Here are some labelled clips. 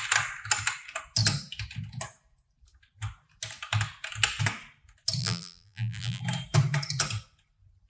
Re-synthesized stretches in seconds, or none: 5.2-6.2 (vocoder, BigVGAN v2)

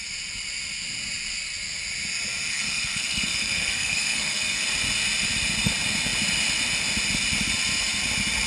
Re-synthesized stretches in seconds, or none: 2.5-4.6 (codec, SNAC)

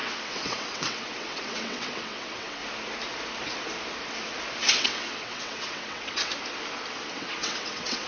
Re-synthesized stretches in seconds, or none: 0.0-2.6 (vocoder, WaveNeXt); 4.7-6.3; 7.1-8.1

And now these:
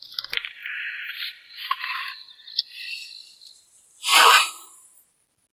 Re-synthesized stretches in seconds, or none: 0.6-2.4 (vocoder, BigVGAN v2)